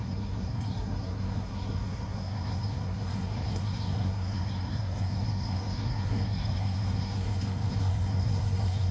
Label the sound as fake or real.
fake